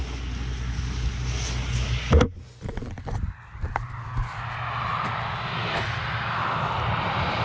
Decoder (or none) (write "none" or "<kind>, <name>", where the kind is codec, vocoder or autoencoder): none